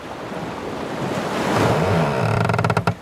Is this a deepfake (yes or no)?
no